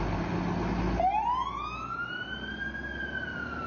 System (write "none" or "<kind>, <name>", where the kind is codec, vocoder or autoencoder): none